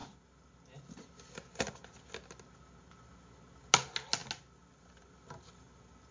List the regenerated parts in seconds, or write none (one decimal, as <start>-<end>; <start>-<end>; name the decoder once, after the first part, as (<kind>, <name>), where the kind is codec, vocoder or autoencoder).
none